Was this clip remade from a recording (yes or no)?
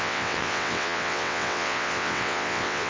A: yes